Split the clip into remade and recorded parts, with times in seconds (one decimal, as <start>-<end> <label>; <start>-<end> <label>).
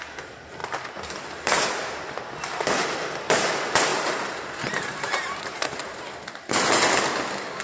0.0-3.9 recorded; 3.9-6.0 remade; 6.0-7.6 recorded